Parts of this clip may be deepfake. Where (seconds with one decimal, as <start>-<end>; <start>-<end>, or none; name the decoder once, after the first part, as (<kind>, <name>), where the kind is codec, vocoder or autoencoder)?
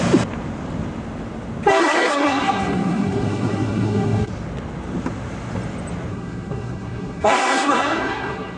1.8-4.3 (codec, SNAC); 6.1-8.6